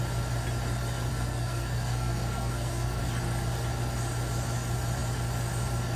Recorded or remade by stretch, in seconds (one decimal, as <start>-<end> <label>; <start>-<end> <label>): 0.0-1.1 recorded; 1.1-3.0 remade; 3.0-6.0 recorded